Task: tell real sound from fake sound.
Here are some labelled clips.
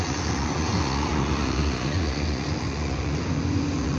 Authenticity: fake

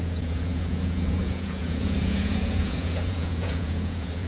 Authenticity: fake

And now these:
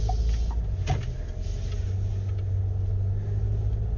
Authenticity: real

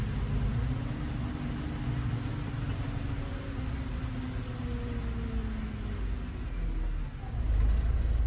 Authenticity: real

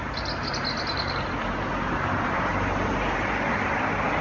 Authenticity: real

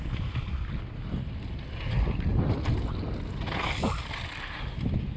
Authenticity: real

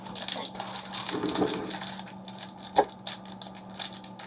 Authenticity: real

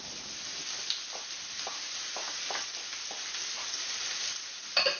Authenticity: real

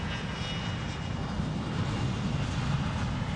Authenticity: real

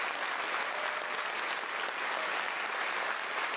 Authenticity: real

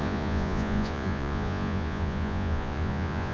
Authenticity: fake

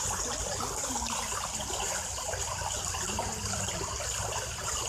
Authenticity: real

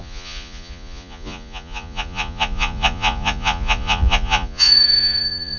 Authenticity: fake